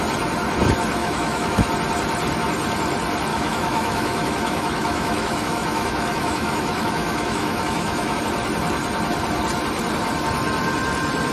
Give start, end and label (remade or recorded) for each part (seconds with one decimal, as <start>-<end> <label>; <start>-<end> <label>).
0.0-1.0 recorded; 1.0-1.7 remade; 1.7-3.3 recorded; 3.3-8.2 remade; 8.2-11.3 recorded